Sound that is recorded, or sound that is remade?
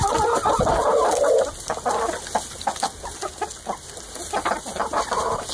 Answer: recorded